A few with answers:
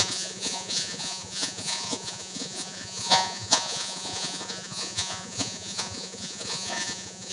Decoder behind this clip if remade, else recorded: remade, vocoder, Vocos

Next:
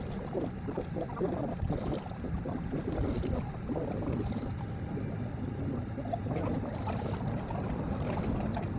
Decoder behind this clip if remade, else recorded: recorded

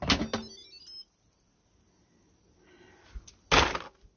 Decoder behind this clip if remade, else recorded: recorded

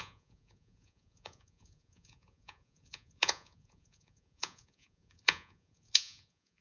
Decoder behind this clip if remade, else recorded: remade, vocoder, Vocos